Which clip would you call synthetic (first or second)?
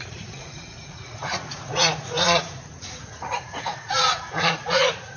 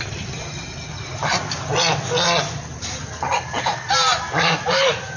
first